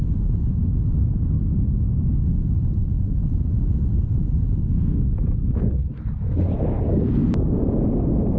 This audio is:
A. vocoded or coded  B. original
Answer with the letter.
B